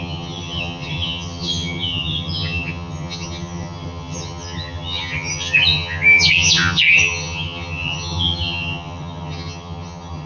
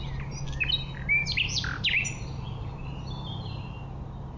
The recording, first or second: second